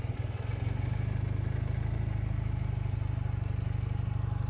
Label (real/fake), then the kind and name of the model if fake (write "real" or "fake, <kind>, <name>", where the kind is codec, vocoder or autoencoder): real